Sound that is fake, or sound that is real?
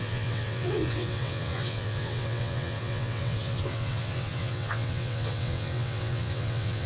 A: fake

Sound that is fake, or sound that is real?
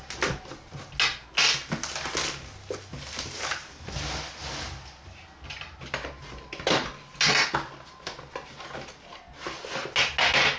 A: real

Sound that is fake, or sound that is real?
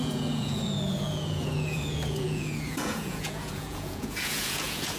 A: fake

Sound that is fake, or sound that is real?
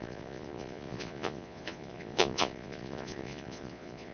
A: fake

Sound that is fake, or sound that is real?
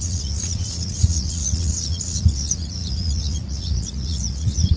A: fake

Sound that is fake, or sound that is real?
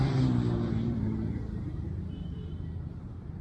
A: fake